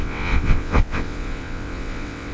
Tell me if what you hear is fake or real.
fake